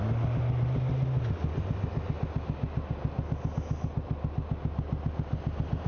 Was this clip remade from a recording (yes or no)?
no